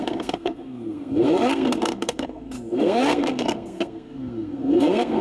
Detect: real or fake fake